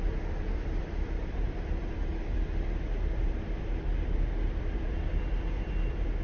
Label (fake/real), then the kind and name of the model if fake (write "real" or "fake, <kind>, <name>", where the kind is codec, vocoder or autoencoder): fake, vocoder, BigVGAN v2